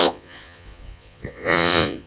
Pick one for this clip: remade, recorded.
remade